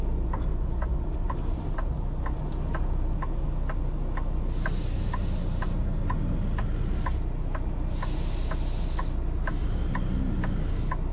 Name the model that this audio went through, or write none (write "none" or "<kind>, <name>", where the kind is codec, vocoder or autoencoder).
none